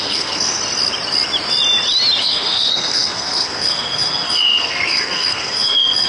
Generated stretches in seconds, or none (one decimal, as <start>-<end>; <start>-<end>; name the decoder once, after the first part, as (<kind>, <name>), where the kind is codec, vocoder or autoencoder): 0.0-0.6 (codec, SNAC); 2.2-6.1